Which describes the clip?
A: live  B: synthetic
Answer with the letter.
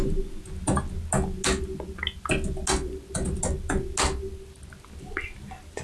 A